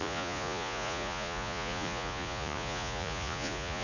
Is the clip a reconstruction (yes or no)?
yes